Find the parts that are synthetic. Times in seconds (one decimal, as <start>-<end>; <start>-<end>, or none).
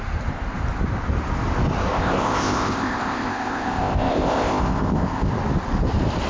1.9-5.3